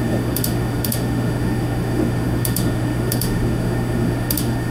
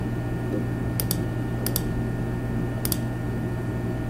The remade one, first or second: first